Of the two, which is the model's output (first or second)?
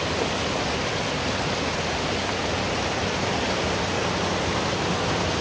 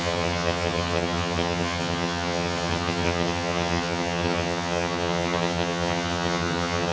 second